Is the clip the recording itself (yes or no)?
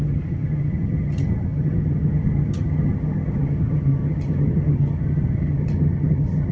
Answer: no